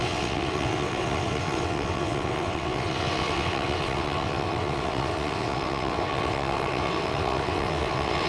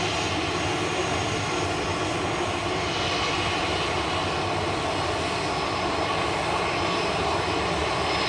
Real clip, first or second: second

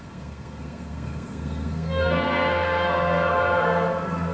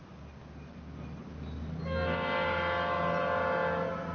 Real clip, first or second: second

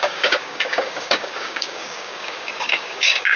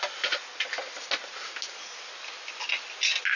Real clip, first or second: second